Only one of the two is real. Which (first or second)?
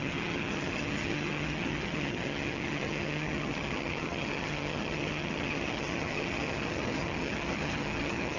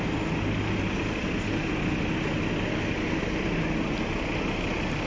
second